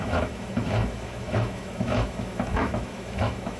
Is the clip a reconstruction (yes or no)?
yes